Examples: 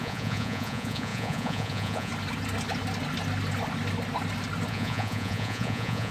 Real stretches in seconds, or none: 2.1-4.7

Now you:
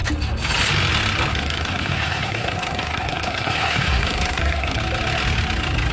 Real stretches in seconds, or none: 0.0-1.3; 4.8-5.9

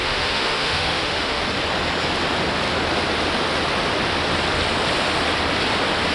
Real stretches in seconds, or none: 1.4-6.1

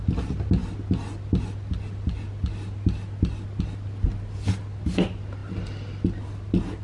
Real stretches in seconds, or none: 0.0-6.8